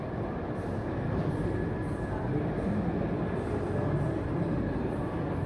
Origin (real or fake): fake